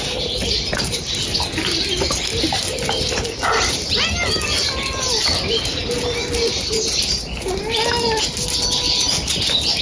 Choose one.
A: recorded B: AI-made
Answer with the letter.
A